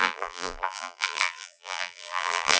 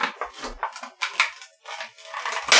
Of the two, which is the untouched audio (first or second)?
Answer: second